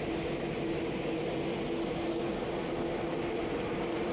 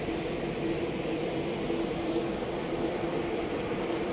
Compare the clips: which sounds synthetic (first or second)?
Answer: second